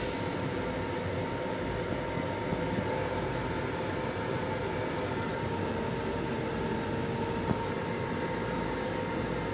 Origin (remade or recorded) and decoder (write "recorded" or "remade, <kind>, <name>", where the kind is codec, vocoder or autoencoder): recorded